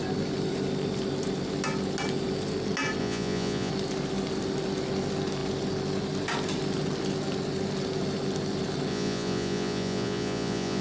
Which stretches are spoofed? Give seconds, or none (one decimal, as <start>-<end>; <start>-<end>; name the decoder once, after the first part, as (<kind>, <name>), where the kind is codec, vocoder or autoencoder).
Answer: 3.0-3.7 (vocoder, Vocos); 8.9-10.8